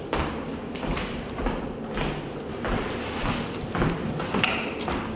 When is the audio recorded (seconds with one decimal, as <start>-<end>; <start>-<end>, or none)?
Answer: 0.0-0.5; 1.6-5.2